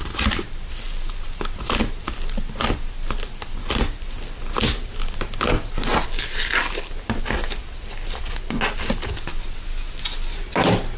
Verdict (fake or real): real